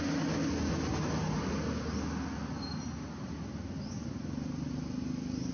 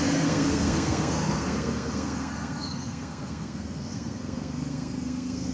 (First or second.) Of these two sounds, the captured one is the first